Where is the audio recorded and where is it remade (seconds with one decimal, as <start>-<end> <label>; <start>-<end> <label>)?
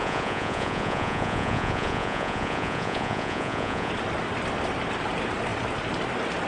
0.0-3.9 remade; 3.9-6.5 recorded